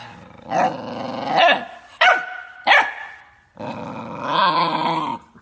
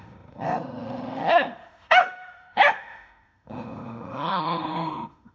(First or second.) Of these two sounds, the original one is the first